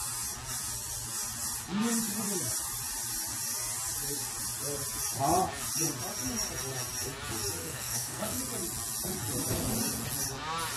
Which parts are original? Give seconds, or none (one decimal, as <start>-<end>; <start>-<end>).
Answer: 0.0-7.6; 8.4-10.8